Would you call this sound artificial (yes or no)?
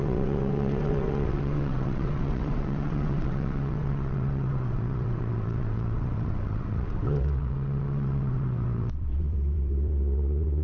yes